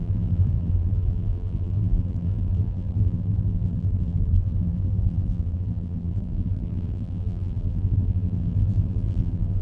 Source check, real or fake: fake